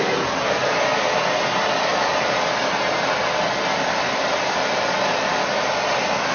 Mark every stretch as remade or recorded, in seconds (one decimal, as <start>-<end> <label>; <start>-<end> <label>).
0.0-6.3 recorded

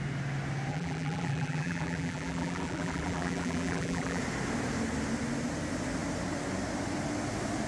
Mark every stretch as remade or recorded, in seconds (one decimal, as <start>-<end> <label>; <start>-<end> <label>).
0.0-0.7 recorded; 0.7-4.2 remade; 4.2-7.7 recorded

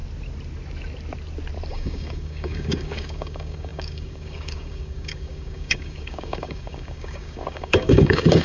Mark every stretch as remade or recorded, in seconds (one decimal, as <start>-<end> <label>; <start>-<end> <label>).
0.0-1.7 recorded; 1.7-8.4 remade